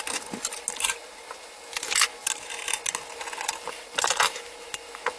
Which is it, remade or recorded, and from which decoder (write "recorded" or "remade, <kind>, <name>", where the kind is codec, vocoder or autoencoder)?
recorded